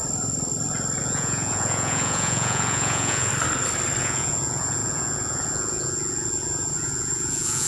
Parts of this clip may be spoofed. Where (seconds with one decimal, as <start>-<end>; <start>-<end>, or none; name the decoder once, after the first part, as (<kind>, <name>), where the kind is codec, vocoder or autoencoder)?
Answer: 1.0-3.3 (vocoder, Vocos); 4.0-7.7